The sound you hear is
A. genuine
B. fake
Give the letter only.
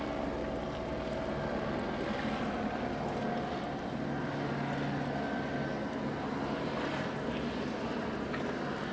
A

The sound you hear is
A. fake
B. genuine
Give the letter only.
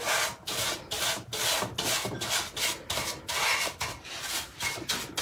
B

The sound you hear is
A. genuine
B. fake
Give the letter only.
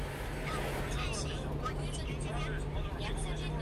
A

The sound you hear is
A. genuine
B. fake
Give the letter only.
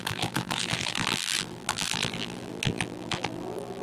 B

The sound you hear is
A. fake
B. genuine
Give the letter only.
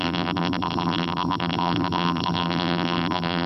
A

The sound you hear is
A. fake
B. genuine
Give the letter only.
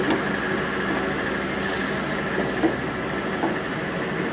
B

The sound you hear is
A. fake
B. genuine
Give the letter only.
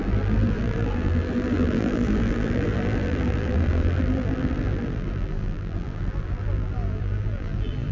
A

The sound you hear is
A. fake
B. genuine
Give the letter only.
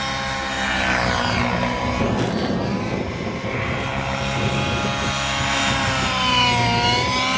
B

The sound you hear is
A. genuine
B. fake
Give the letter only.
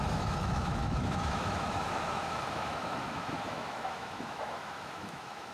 B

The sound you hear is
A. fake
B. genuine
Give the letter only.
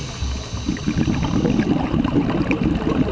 B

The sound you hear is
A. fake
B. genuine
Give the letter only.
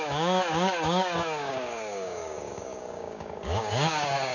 A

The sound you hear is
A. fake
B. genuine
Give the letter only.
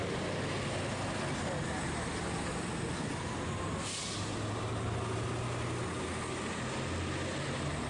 B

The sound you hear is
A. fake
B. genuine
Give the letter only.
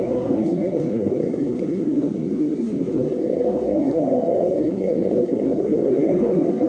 A